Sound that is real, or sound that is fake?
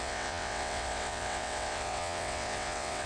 fake